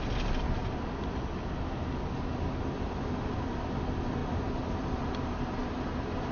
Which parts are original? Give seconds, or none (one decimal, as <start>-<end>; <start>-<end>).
0.0-6.3